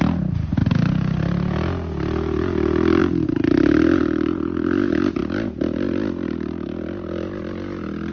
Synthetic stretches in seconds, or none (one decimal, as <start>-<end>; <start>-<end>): 0.6-1.2